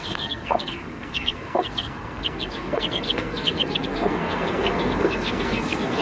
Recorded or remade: remade